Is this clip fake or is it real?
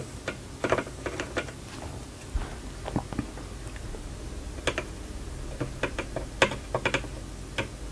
real